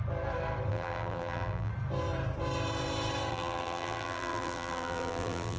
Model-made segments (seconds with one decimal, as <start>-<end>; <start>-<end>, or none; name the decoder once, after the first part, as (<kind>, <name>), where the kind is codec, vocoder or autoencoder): 0.7-1.7 (vocoder, BigVGAN v2); 3.3-5.6